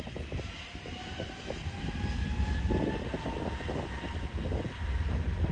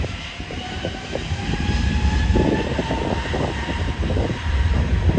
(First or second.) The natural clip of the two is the first